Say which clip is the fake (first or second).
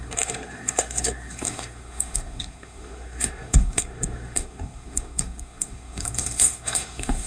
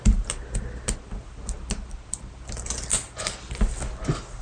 first